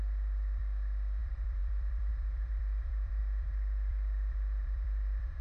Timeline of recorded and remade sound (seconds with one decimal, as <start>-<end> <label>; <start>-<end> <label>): 0.0-0.6 remade; 0.6-1.2 recorded; 1.2-5.4 remade

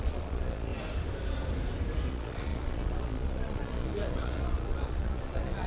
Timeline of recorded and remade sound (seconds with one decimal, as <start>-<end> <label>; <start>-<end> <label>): 0.0-0.7 remade; 0.7-2.1 recorded; 2.1-5.7 remade

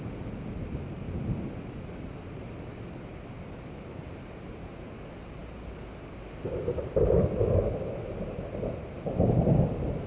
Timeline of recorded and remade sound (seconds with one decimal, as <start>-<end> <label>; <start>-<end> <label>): 0.0-10.1 recorded